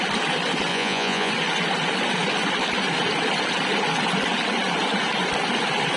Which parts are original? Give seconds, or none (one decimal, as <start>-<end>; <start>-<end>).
0.0-0.7; 1.3-6.0